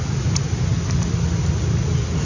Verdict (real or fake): real